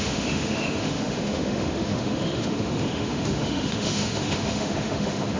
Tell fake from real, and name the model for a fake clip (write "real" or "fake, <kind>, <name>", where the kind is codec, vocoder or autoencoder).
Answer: fake, autoencoder, DAC-VAE